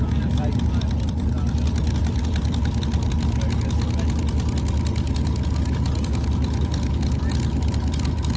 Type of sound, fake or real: real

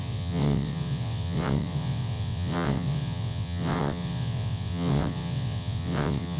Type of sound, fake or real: fake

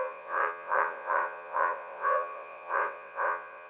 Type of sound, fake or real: fake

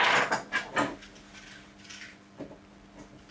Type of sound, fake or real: real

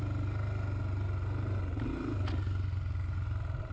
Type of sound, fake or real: real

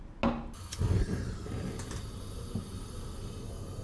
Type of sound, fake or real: real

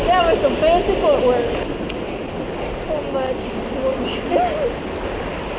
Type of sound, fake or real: real